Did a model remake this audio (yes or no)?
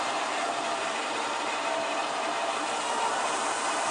yes